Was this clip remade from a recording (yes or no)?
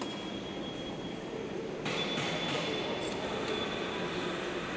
no